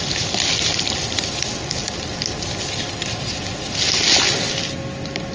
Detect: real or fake real